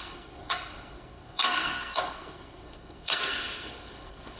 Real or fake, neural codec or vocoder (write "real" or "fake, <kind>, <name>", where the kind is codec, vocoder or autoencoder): fake, codec, SNAC